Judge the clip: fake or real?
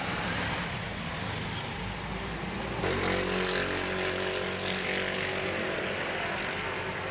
real